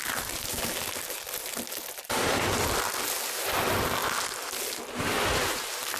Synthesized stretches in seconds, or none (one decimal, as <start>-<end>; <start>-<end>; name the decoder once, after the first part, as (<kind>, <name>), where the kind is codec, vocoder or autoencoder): 4.0-4.6 (vocoder, BigVGAN v2)